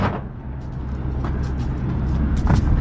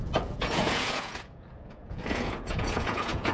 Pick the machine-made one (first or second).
second